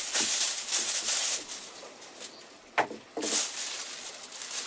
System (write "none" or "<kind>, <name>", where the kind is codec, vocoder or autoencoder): none